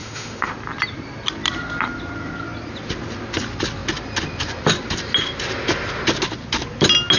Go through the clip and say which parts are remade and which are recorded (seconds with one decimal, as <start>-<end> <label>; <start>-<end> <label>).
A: 0.0-0.5 remade; 0.5-7.2 recorded